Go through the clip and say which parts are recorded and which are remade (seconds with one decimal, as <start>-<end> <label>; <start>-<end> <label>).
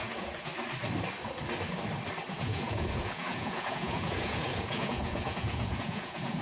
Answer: 0.0-0.5 remade; 0.5-2.3 recorded; 2.3-6.4 remade